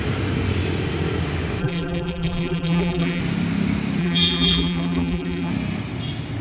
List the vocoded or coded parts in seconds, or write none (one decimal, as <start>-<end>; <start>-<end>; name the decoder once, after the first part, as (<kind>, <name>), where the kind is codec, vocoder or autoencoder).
1.6-3.2 (vocoder, BigVGAN v2); 4.0-5.5